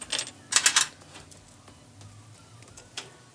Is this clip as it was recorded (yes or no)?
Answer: yes